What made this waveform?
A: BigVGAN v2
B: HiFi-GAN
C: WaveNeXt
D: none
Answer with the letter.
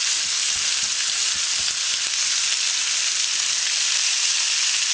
D